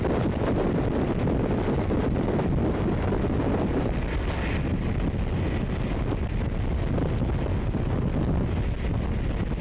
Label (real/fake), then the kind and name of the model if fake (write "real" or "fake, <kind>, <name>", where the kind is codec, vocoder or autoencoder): real